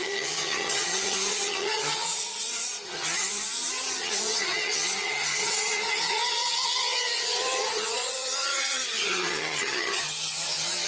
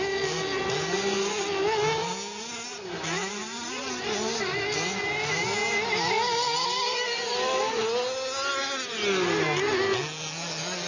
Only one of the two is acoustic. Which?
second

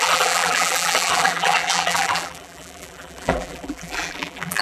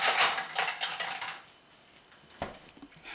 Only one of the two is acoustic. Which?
second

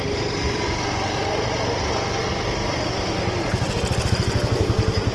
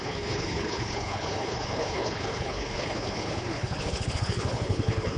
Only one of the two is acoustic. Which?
first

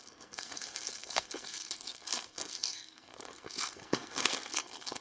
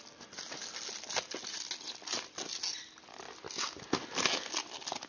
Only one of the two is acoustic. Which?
second